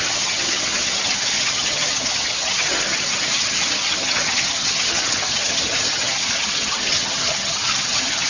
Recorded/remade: remade